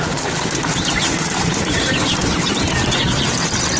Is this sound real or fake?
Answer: fake